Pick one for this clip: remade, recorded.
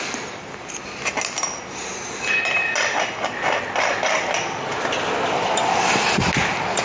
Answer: recorded